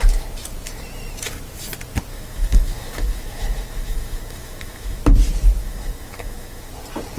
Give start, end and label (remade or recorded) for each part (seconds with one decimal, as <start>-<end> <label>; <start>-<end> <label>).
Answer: 0.0-2.1 recorded; 2.1-5.0 remade; 5.0-5.6 recorded; 5.6-6.7 remade; 6.7-7.2 recorded